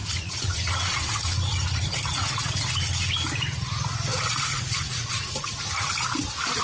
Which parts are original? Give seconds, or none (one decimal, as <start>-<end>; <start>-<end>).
2.7-4.1; 5.6-6.6